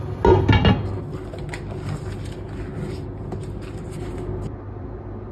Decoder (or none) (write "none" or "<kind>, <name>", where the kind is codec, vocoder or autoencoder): none